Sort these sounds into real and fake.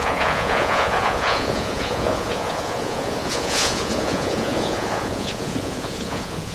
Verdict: fake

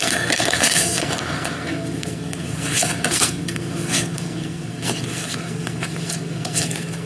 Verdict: fake